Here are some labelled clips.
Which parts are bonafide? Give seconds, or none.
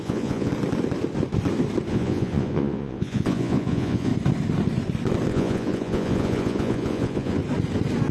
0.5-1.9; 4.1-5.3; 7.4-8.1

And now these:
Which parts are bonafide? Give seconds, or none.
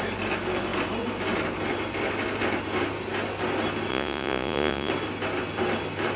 0.0-3.9; 4.9-6.2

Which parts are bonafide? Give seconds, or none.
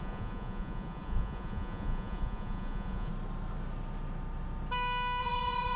3.1-5.2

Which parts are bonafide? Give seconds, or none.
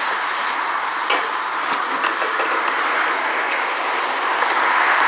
0.0-5.1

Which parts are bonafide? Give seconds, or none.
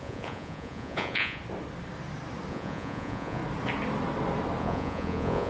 1.4-2.5; 3.4-4.6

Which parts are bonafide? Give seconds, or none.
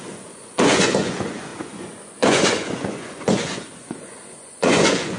none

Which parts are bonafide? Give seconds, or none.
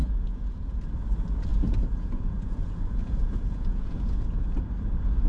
0.8-1.5; 4.6-5.3